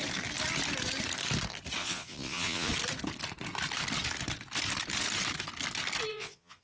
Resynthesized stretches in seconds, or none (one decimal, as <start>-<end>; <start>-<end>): 1.8-2.7; 6.1-6.6